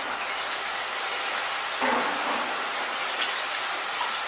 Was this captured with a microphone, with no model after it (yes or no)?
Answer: yes